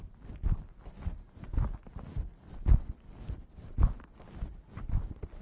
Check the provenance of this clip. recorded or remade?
recorded